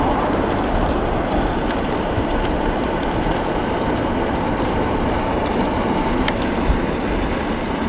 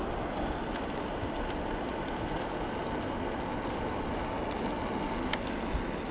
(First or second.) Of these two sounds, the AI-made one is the first